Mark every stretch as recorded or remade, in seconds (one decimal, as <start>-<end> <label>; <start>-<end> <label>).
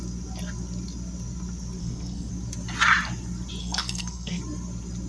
0.0-1.8 recorded; 1.8-2.3 remade; 2.3-3.6 recorded; 3.6-4.4 remade; 4.4-5.1 recorded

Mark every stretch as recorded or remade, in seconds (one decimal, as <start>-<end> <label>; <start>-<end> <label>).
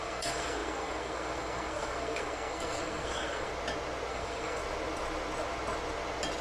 0.0-3.5 remade; 3.5-4.1 recorded; 4.1-4.6 remade; 4.6-6.4 recorded